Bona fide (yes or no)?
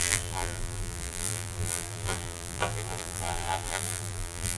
no